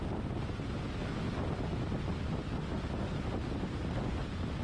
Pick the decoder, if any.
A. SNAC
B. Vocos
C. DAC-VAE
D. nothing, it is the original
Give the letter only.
D